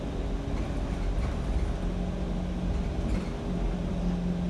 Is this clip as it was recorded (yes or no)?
yes